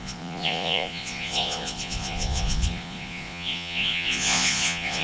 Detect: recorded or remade remade